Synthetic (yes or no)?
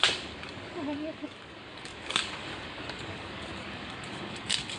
yes